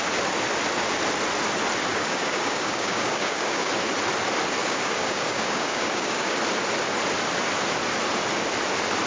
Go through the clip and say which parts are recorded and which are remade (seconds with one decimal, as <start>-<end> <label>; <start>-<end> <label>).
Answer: 0.0-1.9 recorded; 1.9-3.7 remade; 3.7-4.6 recorded; 4.6-6.4 remade; 6.4-9.1 recorded